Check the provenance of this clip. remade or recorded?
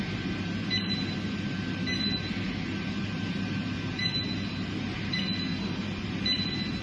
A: recorded